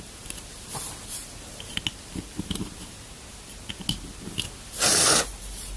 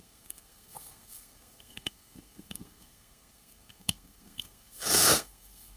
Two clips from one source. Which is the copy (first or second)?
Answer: second